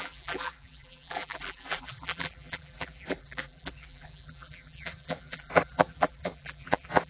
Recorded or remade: remade